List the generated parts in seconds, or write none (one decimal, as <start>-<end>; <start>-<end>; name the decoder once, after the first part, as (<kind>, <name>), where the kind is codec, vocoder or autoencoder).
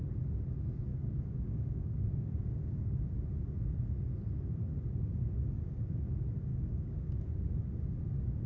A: 0.9-3.1 (codec, DAC); 4.7-5.8; 6.5-7.5